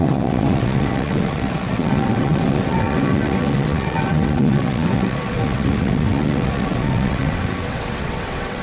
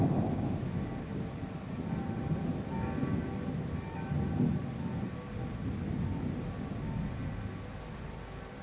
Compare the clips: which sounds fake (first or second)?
first